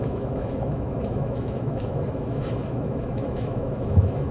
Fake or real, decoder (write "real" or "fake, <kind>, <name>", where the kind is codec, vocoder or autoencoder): fake, autoencoder, DAC-VAE